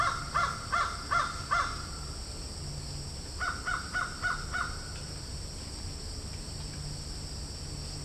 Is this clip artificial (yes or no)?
no